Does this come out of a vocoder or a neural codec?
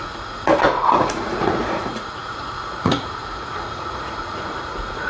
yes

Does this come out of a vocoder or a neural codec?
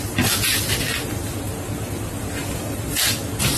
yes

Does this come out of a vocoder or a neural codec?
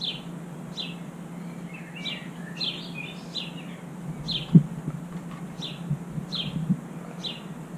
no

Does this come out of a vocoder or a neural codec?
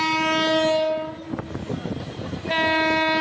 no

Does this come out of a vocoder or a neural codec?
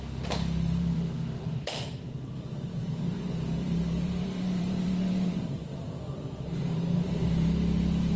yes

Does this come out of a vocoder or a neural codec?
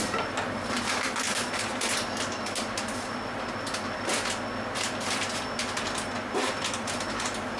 no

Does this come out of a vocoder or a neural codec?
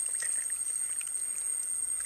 no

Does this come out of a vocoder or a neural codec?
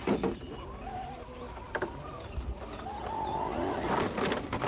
no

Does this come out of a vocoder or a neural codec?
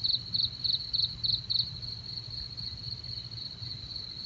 no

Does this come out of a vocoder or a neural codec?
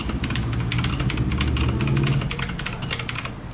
no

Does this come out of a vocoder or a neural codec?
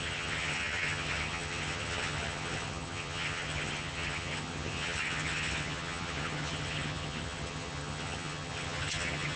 yes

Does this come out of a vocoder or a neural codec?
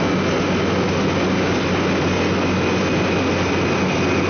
no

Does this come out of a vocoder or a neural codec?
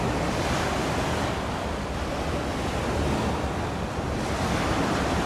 no